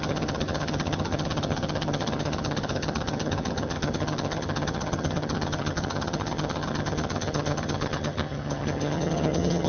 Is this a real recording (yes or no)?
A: no